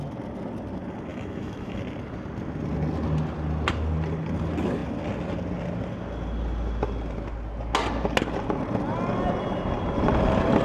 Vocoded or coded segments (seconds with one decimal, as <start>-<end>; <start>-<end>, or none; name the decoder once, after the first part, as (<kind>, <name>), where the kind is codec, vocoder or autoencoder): 1.1-1.8 (autoencoder, DAC-VAE)